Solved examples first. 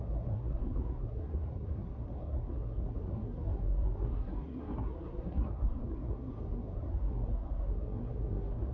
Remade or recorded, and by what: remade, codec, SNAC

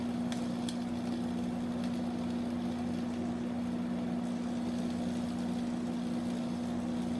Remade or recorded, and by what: recorded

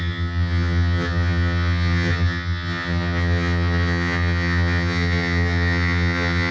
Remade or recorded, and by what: remade, vocoder, HiFi-GAN